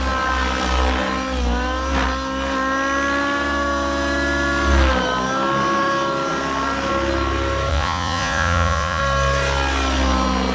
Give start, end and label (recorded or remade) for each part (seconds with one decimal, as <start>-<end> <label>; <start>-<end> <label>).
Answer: 0.0-7.7 recorded; 7.7-9.0 remade; 9.0-10.5 recorded